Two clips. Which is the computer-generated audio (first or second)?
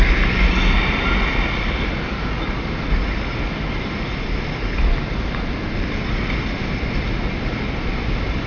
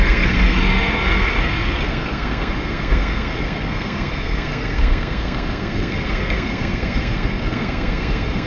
second